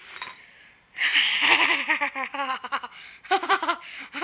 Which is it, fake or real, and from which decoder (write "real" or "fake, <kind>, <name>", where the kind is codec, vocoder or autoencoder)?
fake, vocoder, BigVGAN v2